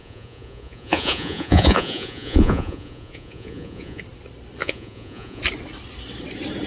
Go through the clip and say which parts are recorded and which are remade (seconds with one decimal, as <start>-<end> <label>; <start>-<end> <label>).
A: 0.0-4.0 remade; 4.0-4.6 recorded; 4.6-5.4 remade; 5.4-6.7 recorded